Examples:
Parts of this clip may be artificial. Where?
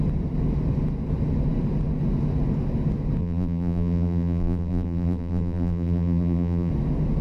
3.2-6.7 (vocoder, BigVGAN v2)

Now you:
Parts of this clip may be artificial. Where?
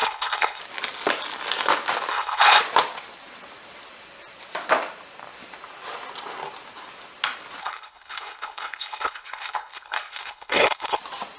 0.0-0.6 (codec, HILCodec); 2.1-2.6; 7.6-11.0